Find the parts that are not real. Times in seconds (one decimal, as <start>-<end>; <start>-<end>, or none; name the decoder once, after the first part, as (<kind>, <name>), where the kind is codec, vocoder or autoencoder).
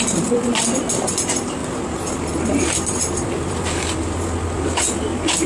0.0-5.5 (vocoder, BigVGAN v2)